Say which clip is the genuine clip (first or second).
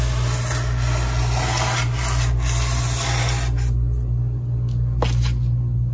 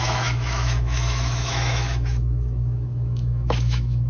first